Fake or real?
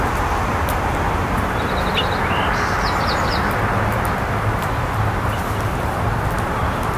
real